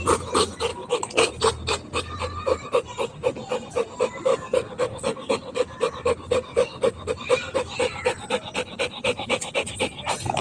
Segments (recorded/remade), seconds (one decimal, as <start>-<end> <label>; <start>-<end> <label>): 0.0-0.7 recorded; 0.7-1.3 remade; 1.3-4.3 recorded; 4.3-7.1 remade; 7.1-10.4 recorded